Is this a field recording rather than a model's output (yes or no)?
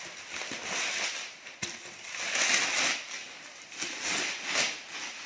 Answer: yes